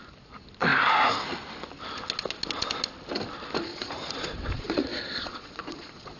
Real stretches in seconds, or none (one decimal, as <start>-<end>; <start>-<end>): 0.0-3.7